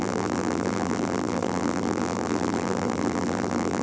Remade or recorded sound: remade